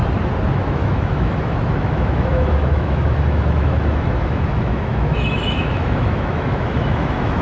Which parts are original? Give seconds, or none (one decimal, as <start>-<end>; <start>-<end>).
0.0-0.5